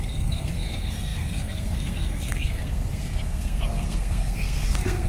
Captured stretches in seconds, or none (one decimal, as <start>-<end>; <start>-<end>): none